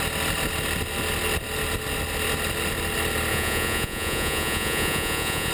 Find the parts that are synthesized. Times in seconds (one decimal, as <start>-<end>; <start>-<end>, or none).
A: 3.3-5.5